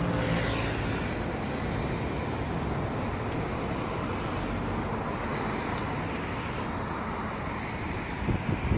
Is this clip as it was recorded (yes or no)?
yes